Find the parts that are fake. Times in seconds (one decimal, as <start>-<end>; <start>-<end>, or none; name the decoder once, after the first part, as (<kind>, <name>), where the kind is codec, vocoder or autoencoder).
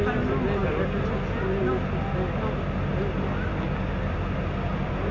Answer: none